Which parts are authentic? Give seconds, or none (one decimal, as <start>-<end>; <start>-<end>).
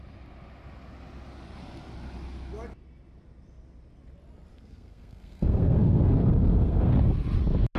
0.0-4.5; 6.9-7.8